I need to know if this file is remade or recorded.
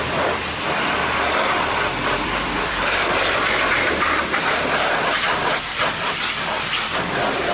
remade